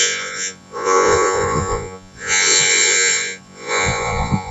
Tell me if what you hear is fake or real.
fake